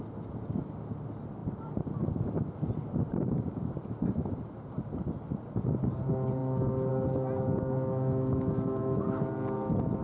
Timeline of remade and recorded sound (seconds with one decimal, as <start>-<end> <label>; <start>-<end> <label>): 0.0-10.0 recorded